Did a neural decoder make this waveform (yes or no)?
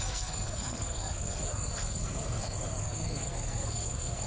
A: yes